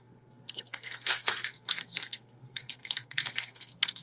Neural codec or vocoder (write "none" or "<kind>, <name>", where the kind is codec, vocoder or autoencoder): codec, SNAC